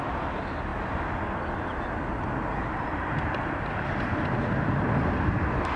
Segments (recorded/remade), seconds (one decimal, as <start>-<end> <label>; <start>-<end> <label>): 0.0-5.8 recorded